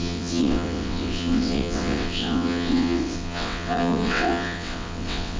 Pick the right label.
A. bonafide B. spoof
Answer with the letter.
B